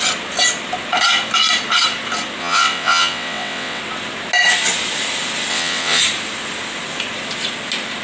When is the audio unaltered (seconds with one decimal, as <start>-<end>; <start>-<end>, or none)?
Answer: 0.0-2.4; 3.8-5.5; 6.0-8.0